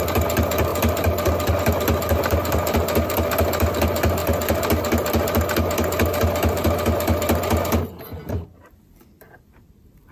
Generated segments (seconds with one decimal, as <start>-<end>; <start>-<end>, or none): none